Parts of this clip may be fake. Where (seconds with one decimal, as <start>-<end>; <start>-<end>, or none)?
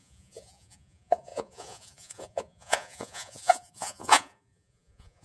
0.0-5.2